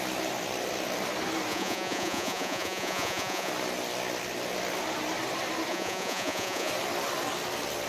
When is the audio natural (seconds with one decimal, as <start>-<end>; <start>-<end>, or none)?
0.0-1.5; 3.5-5.7; 6.7-7.9